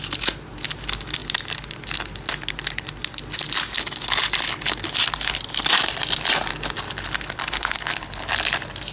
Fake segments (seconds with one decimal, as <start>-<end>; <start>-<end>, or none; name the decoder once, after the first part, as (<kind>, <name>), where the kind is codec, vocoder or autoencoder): 7.4-8.3 (codec, HILCodec)